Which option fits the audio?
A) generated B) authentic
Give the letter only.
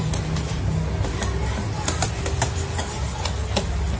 B